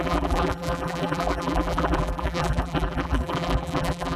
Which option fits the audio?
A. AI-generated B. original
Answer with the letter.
A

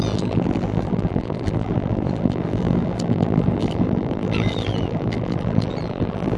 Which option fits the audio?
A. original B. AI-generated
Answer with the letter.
B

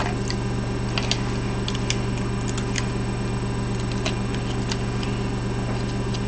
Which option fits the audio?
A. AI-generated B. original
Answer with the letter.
B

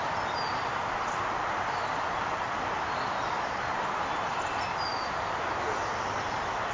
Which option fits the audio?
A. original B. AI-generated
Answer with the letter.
A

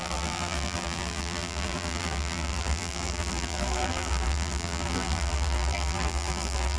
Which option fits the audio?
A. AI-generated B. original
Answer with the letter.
A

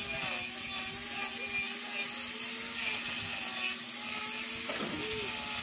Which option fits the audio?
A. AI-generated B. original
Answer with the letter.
B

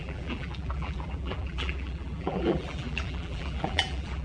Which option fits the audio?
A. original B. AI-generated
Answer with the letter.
B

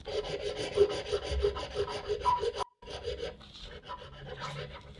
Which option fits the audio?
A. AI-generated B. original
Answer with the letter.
A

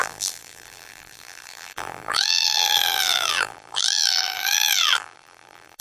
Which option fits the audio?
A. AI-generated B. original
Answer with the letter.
A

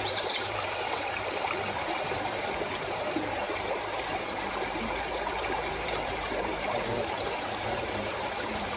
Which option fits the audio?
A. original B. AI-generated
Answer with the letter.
B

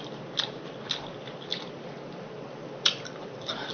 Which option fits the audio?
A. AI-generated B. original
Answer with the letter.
B